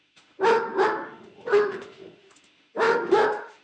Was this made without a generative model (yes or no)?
no